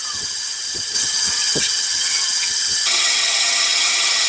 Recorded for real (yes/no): no